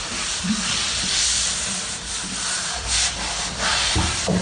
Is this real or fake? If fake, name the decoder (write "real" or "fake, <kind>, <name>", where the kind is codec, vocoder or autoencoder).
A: fake, vocoder, BigVGAN v2